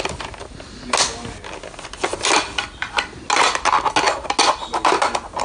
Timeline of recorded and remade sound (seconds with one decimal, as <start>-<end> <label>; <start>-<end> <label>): 0.0-5.4 recorded